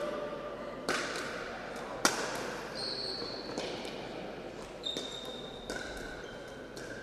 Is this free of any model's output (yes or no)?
yes